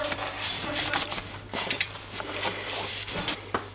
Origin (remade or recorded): remade